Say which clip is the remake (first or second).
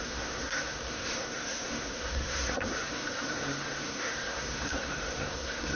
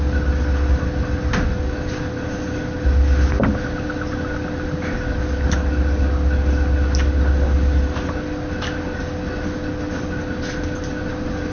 first